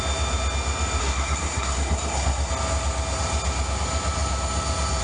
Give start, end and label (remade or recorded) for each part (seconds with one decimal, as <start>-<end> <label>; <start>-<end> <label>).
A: 0.0-1.0 recorded; 1.0-2.5 remade; 2.5-5.0 recorded

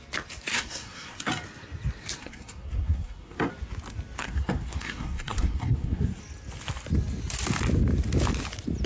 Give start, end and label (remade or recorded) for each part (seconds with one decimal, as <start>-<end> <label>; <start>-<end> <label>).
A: 0.0-0.5 recorded; 0.5-1.3 remade; 1.3-2.2 recorded; 2.2-3.5 remade; 3.5-4.2 recorded; 4.2-6.2 remade; 6.2-8.9 recorded

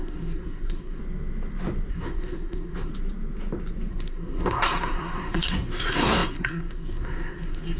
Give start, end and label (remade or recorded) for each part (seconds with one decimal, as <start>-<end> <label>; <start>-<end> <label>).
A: 0.0-1.0 remade; 1.0-1.9 recorded; 1.9-2.9 remade; 2.9-3.9 recorded; 3.9-7.8 remade